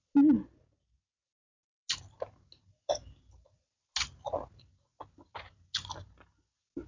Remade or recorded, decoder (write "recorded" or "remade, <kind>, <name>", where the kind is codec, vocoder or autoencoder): recorded